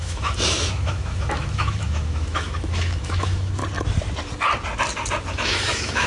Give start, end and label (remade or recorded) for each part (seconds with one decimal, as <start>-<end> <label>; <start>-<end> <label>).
0.0-3.6 remade; 3.6-5.3 recorded; 5.3-6.1 remade